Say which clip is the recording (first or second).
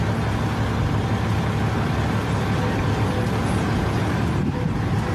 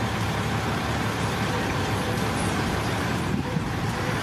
first